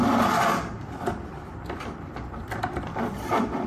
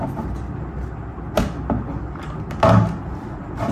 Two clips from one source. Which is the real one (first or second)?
second